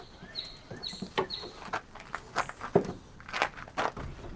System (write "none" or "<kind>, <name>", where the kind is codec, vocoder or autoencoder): none